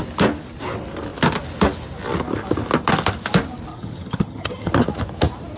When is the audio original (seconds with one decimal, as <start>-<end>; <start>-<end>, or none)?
0.0-3.7; 4.7-5.6